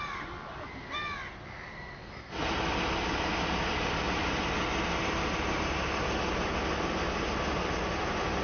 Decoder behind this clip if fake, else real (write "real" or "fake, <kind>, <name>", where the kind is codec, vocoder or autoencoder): real